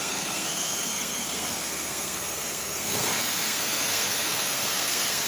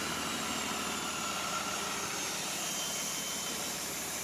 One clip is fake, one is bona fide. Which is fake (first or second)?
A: first